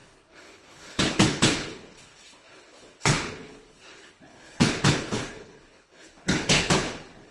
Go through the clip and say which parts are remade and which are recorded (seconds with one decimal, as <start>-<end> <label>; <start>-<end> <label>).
0.0-7.3 remade